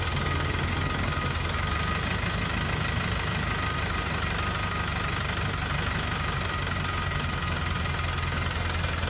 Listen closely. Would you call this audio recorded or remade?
recorded